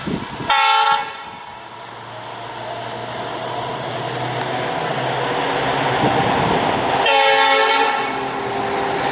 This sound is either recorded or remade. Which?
recorded